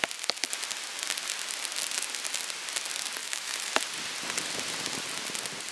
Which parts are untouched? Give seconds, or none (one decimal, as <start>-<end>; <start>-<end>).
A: 0.0-3.2; 3.7-5.7